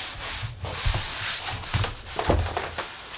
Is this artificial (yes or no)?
yes